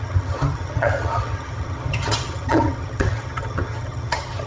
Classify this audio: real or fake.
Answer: fake